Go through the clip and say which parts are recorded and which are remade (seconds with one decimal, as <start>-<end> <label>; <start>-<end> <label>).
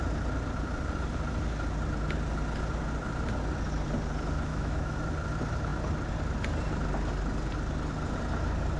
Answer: 0.0-4.5 recorded; 4.5-5.0 remade; 5.0-8.8 recorded